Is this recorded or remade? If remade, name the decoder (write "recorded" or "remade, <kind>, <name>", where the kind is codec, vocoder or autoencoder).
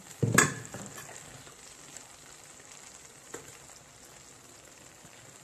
recorded